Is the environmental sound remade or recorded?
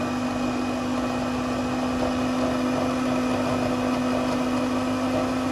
recorded